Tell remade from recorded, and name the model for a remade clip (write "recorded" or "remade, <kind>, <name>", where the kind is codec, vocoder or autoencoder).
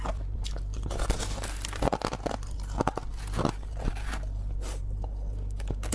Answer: recorded